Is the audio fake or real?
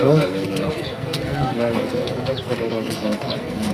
fake